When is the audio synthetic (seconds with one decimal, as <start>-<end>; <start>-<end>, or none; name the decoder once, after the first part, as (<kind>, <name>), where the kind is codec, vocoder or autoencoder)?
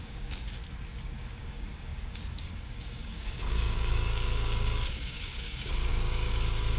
0.0-0.6 (codec, DAC); 1.2-6.8